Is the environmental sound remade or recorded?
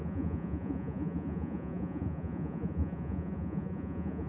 remade